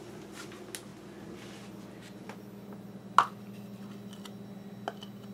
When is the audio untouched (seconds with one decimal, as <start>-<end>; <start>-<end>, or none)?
0.0-5.3